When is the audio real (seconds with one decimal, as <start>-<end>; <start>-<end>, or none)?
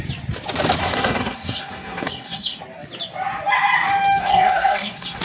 0.0-0.8; 2.6-4.2